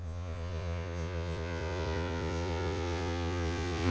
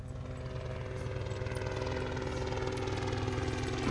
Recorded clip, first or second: second